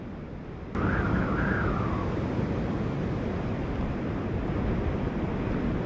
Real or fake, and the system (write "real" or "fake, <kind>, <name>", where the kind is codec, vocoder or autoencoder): real